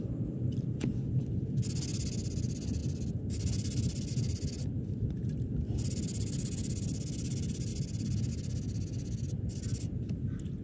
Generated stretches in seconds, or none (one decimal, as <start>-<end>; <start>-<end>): 2.8-4.1